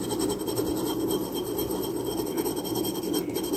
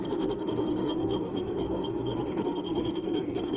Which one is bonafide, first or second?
first